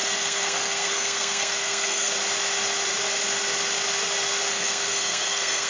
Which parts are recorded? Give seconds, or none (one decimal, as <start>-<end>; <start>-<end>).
2.1-4.5